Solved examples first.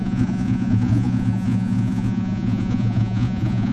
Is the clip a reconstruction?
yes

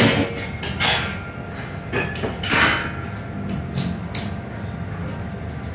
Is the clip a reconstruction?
no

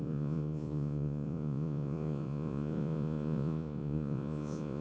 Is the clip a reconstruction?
yes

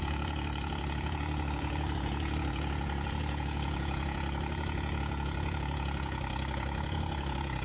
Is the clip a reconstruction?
yes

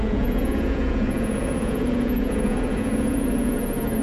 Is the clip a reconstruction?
yes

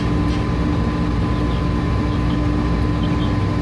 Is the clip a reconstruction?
no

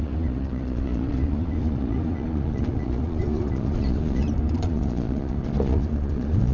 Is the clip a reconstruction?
yes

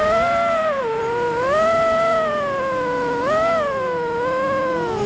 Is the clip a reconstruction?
no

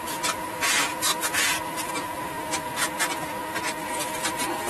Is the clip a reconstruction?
no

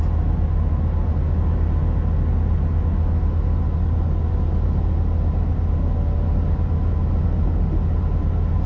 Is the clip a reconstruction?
no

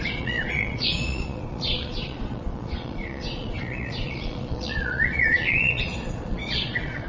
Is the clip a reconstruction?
yes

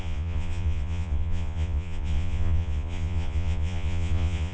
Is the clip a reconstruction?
yes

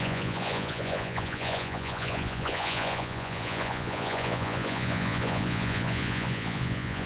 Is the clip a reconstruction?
yes